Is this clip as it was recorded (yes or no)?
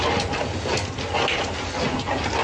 yes